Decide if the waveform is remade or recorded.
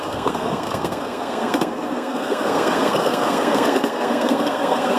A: remade